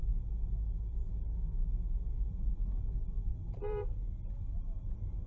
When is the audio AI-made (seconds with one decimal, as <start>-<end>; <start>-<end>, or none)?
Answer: 3.3-3.9